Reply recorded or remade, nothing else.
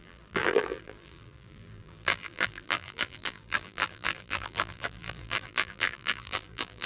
remade